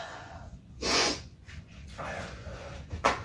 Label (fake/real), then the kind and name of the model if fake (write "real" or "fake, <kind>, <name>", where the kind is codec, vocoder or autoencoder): fake, vocoder, Vocos